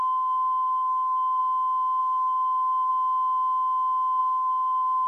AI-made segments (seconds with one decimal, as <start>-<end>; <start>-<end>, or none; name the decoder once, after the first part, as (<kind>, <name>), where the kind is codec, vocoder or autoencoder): 0.0-1.4 (codec, SNAC); 2.0-2.9; 4.2-5.1